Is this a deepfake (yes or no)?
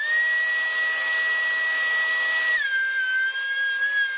no